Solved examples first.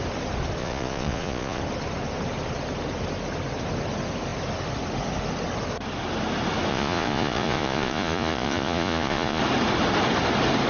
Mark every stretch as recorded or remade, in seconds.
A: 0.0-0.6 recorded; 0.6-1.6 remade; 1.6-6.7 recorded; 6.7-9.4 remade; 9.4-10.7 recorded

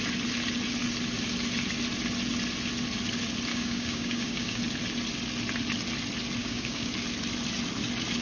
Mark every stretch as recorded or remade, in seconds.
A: 0.0-3.5 recorded; 3.5-4.6 remade; 4.6-6.4 recorded; 6.4-6.9 remade; 6.9-8.2 recorded

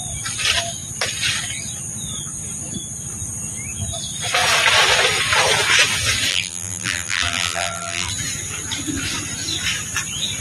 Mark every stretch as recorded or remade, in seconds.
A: 0.0-6.3 recorded; 6.3-8.1 remade; 8.1-10.4 recorded

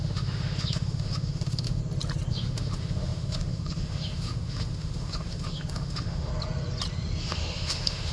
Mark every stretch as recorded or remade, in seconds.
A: 0.0-1.8 remade; 1.8-2.3 recorded; 2.3-6.3 remade; 6.3-7.2 recorded; 7.2-8.1 remade

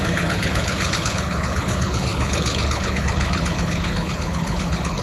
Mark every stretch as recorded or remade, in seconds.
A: 0.0-5.0 remade